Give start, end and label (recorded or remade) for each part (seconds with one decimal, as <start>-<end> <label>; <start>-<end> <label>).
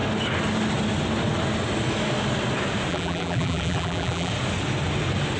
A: 0.0-2.9 recorded; 2.9-4.3 remade; 4.3-5.4 recorded